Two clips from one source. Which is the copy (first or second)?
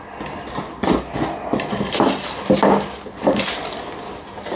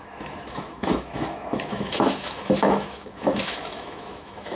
second